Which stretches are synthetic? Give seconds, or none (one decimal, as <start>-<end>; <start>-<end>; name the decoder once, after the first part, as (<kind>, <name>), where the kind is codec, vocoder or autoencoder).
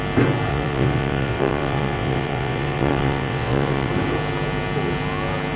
0.5-3.9 (vocoder, WaveNeXt)